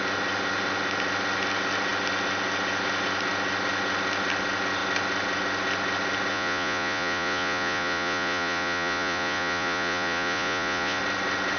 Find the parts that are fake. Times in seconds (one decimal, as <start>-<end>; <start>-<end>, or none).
6.3-11.0

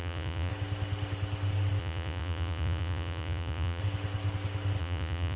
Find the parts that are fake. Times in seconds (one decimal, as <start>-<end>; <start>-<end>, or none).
0.0-0.5; 1.8-3.8; 4.8-5.4

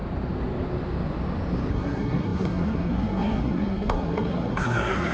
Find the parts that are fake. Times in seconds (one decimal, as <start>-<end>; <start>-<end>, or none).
1.7-5.1

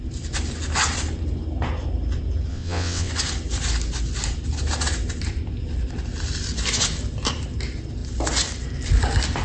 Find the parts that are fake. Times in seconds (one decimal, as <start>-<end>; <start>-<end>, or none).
2.5-3.1

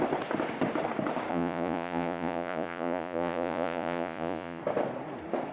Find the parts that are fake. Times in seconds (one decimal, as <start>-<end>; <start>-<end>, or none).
1.3-4.6

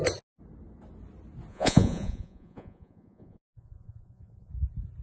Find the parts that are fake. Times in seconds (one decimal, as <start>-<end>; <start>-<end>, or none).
1.5-4.5

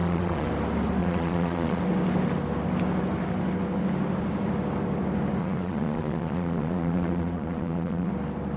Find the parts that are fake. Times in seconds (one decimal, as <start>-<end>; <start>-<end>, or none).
0.0-0.5; 1.0-1.8; 5.4-8.1